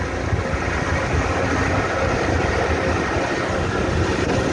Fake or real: real